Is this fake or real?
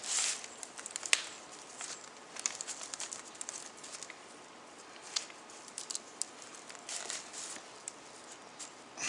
real